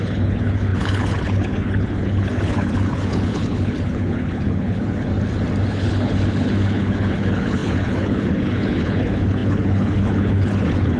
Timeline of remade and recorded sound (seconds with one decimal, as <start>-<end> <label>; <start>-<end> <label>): 0.0-5.1 remade; 5.1-5.7 recorded; 5.7-11.0 remade